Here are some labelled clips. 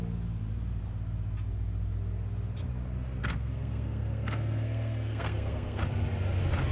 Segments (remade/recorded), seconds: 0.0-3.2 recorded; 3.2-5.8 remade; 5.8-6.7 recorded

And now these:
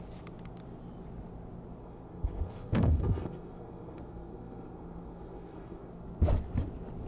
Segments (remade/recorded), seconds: 0.0-1.8 recorded; 1.8-5.9 remade; 5.9-7.1 recorded